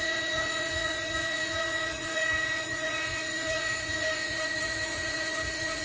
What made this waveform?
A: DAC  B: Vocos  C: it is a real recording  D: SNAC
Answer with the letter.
B